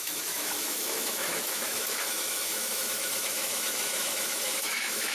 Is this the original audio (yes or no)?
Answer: no